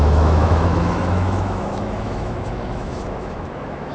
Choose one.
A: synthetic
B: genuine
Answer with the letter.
A